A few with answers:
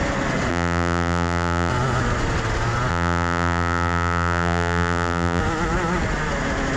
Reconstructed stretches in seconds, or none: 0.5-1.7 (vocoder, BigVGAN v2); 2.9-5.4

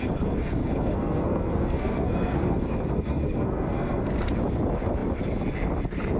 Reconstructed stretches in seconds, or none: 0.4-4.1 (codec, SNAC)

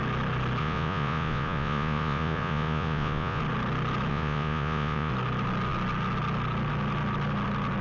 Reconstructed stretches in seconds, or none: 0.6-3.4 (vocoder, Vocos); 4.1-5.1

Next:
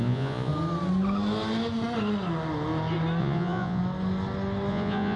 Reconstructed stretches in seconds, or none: 0.0-0.5 (vocoder, Vocos); 3.2-3.8; 4.7-5.2

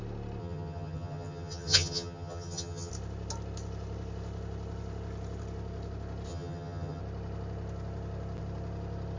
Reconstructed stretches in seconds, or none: 0.4-2.9 (vocoder, HiFi-GAN); 6.3-7.0

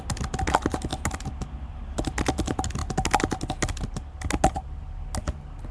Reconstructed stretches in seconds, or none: none

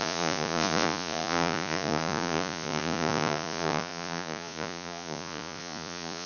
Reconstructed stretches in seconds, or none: 0.0-6.3 (vocoder, Vocos)